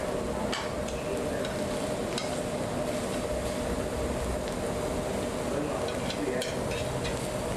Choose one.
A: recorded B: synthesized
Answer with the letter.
A